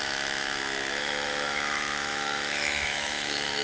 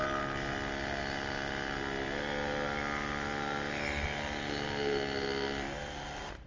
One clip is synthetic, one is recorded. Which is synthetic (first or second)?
first